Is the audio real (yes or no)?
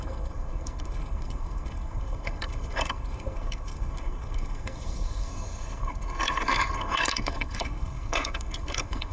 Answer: no